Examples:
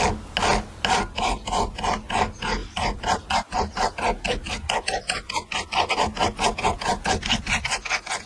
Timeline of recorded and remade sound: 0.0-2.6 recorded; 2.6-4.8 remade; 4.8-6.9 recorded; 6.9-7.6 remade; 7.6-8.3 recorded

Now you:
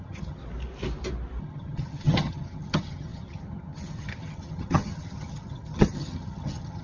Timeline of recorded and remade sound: 0.0-0.4 remade; 0.4-1.4 recorded; 1.4-6.8 remade

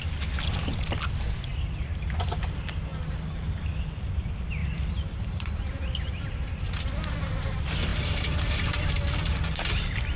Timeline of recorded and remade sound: 0.0-4.6 recorded; 4.6-6.5 remade; 6.5-7.9 recorded; 7.9-9.7 remade; 9.7-10.2 recorded

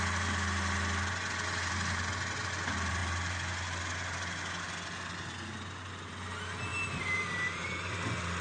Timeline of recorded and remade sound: 0.0-6.7 recorded; 6.7-8.0 remade; 8.0-8.4 recorded

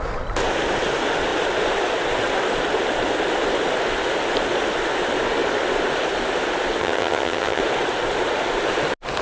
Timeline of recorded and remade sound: 0.0-6.8 recorded; 6.8-7.6 remade; 7.6-9.2 recorded